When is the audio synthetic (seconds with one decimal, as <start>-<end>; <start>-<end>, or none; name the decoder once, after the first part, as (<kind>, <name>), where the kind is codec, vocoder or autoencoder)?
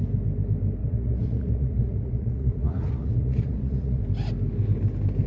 0.8-4.0 (vocoder, Vocos)